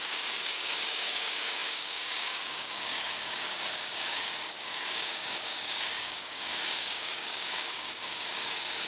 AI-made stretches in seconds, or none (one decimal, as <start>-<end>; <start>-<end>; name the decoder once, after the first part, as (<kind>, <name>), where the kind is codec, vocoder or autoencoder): 0.0-8.9 (codec, DAC)